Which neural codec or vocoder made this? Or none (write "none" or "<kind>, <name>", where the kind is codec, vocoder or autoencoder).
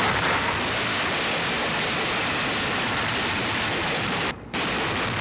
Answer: none